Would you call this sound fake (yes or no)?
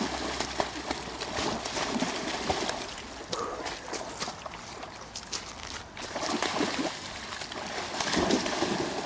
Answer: no